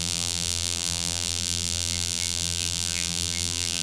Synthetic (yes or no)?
yes